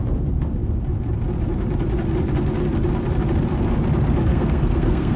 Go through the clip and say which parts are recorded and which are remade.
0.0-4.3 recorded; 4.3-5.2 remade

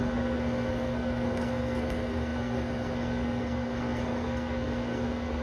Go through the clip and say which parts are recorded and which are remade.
0.0-5.4 remade